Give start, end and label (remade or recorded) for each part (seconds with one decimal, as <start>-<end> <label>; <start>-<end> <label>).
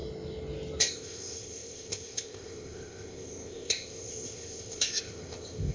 0.0-0.8 recorded; 0.8-5.7 remade